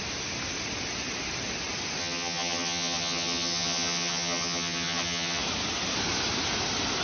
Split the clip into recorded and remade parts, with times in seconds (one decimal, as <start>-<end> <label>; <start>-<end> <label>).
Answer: 0.0-2.0 recorded; 2.0-5.4 remade; 5.4-7.0 recorded